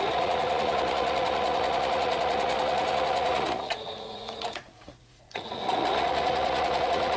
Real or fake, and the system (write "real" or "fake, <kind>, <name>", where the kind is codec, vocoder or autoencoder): fake, vocoder, Vocos